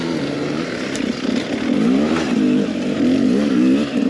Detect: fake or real fake